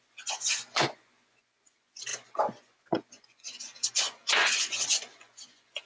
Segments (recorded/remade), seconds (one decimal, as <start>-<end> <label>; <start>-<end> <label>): 0.0-5.9 remade